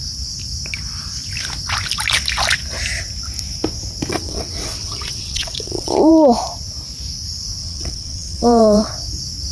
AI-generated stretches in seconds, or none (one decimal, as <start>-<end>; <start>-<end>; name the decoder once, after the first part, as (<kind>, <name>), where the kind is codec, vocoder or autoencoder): 4.1-6.1 (vocoder, WaveNeXt); 7.6-8.9